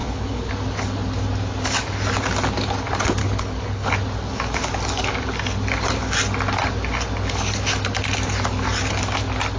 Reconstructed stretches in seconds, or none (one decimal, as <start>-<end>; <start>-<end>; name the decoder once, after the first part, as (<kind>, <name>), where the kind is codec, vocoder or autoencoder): 0.0-0.5 (codec, HILCodec); 3.2-3.9